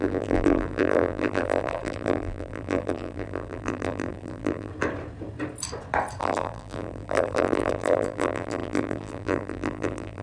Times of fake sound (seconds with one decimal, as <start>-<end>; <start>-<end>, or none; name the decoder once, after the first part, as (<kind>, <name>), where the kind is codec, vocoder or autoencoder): 0.0-4.7 (vocoder, BigVGAN v2); 6.2-10.2